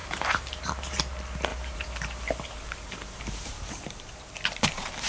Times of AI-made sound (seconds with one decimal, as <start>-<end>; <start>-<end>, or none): 0.0-1.0; 1.5-4.3